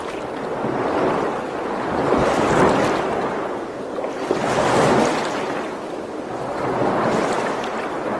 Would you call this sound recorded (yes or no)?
yes